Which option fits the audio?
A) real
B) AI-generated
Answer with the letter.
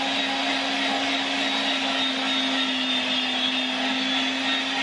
A